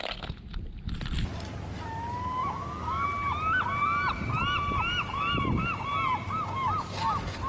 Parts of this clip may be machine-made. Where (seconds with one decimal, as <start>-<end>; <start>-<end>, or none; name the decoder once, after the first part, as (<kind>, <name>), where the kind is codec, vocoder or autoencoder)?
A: 2.4-3.1 (autoencoder, DAC-VAE)